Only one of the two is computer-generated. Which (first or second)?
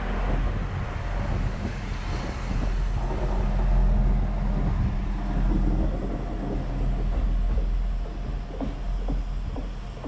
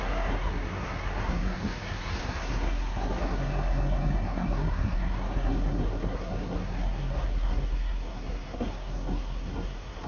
second